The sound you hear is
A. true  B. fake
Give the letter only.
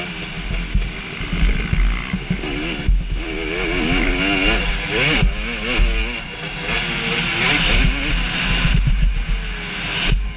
A